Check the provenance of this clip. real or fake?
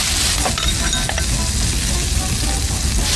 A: real